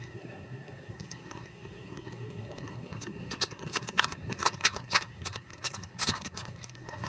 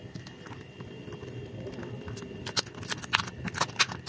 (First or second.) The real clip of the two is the second